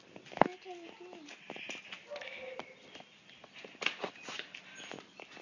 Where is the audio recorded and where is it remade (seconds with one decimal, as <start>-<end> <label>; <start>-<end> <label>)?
0.0-5.4 recorded